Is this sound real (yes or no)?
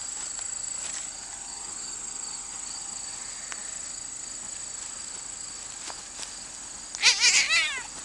yes